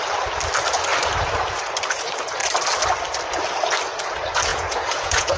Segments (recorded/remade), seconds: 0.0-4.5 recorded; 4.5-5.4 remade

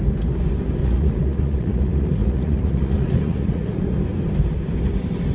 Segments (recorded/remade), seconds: 0.0-0.8 recorded; 0.8-4.0 remade; 4.0-5.3 recorded

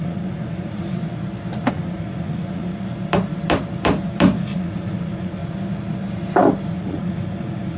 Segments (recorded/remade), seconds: 0.0-1.0 remade; 1.0-1.7 recorded; 1.7-2.7 remade; 2.7-4.4 recorded; 4.4-5.4 remade; 5.4-6.8 recorded; 6.8-7.8 remade

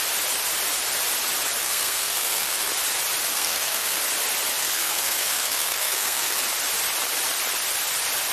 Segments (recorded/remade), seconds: 0.0-1.6 recorded; 1.6-2.7 remade; 2.7-3.3 recorded; 3.3-4.0 remade; 4.0-4.6 recorded; 4.6-6.4 remade; 6.4-8.3 recorded

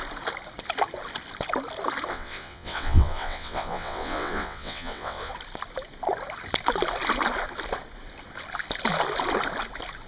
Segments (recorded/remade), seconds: 0.0-2.1 recorded; 2.1-5.3 remade; 5.3-10.1 recorded

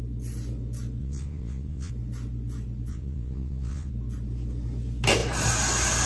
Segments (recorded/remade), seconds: 0.0-1.0 recorded; 1.0-1.9 remade; 1.9-2.9 recorded; 2.9-3.9 remade; 3.9-6.1 recorded

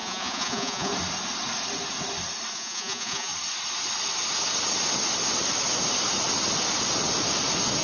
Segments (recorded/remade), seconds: 0.0-0.9 remade; 0.9-2.5 recorded; 2.5-3.3 remade; 3.3-7.8 recorded